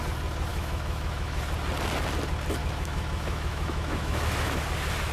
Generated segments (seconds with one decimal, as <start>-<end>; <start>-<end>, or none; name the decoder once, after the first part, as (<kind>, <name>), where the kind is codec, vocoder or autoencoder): 0.5-1.4 (autoencoder, DAC-VAE); 2.6-4.6